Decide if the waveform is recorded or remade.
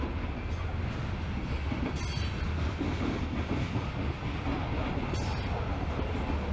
recorded